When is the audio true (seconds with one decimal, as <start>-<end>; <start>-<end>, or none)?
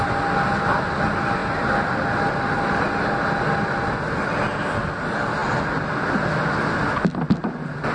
0.0-7.9